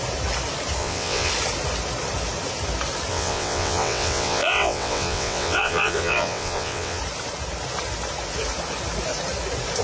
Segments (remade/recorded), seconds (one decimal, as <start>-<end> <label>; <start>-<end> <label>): 0.0-0.8 recorded; 0.8-1.3 remade; 1.3-3.1 recorded; 3.1-7.0 remade; 7.0-9.8 recorded